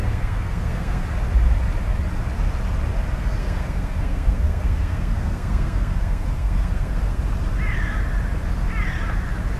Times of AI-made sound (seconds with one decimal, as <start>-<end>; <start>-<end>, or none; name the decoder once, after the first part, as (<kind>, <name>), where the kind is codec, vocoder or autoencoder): 0.0-1.0 (codec, SNAC); 3.4-7.2